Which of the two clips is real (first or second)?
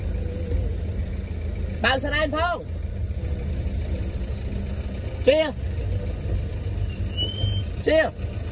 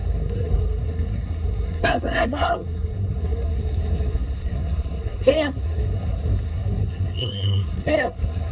first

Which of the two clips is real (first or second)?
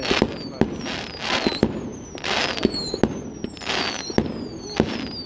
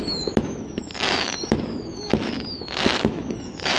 first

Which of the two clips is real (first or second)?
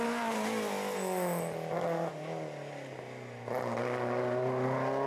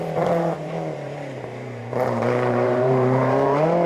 first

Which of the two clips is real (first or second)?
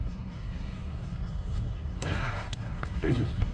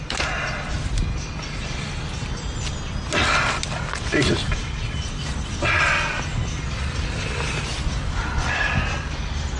second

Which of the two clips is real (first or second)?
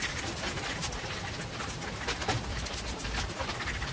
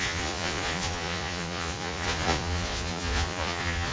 first